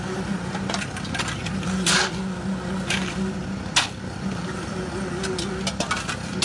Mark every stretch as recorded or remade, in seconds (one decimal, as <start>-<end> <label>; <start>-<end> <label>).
0.0-6.4 recorded